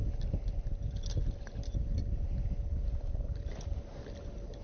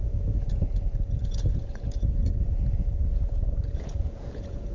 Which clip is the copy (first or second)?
second